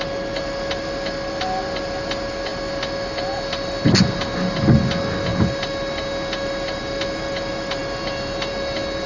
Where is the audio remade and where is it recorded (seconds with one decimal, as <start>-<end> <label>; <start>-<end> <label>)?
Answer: 0.0-9.1 recorded